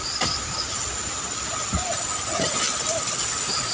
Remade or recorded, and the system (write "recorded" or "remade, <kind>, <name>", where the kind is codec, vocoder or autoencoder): recorded